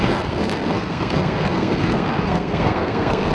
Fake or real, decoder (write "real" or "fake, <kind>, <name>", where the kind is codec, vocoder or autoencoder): fake, codec, SNAC